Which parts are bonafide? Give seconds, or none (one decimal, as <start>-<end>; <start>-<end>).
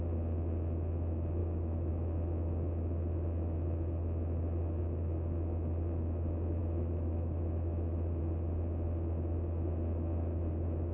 0.0-1.4; 1.9-6.6; 8.2-10.9